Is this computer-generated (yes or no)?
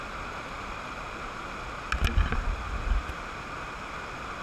no